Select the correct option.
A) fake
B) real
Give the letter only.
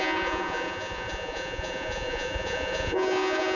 A